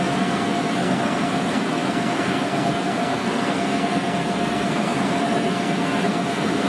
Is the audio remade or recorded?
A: remade